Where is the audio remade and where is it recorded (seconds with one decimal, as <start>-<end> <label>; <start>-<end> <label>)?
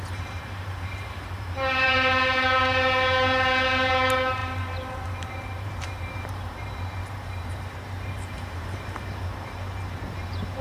0.0-10.6 remade